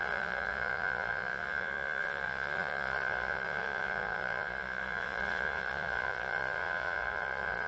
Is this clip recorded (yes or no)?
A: no